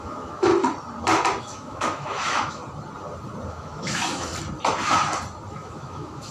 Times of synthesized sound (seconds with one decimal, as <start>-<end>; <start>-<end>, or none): 0.0-0.5; 1.4-2.6; 3.5-4.3; 5.5-6.3